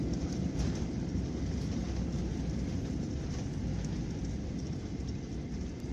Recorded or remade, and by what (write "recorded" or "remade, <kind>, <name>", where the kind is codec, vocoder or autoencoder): remade, vocoder, BigVGAN v2